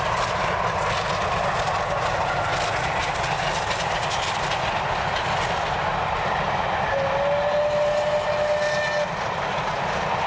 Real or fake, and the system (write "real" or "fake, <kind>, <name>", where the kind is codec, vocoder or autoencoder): real